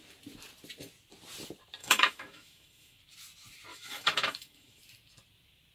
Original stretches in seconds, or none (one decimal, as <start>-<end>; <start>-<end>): 0.0-1.8; 3.0-3.7; 4.8-5.7